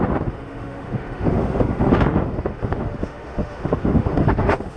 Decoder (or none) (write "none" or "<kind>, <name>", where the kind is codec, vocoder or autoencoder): autoencoder, DAC-VAE